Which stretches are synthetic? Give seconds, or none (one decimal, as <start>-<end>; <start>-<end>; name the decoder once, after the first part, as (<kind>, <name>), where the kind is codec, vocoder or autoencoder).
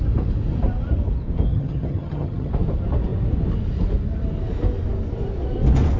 1.5-2.5 (vocoder, HiFi-GAN)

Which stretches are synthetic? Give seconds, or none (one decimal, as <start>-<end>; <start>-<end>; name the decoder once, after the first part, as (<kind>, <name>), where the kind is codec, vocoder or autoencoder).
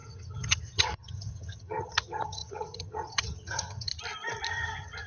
0.0-3.9 (vocoder, HiFi-GAN); 4.5-5.1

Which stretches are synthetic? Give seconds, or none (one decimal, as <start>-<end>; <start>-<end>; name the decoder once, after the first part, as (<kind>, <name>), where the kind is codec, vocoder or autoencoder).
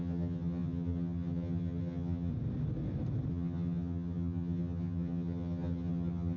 0.0-2.3 (vocoder, HiFi-GAN); 3.3-6.4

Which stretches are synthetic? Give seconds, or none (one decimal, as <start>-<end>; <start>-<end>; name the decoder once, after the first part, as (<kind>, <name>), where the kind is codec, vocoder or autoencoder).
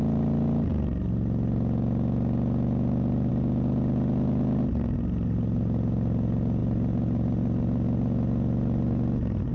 none